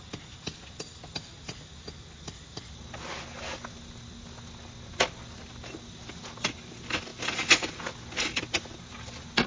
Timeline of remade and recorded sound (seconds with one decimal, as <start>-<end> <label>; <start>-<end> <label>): 0.0-9.5 recorded